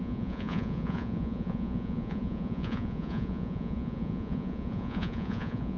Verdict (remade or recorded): remade